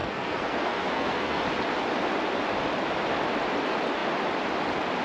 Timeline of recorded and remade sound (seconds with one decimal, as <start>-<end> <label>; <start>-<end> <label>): 0.0-1.4 remade; 1.4-5.0 recorded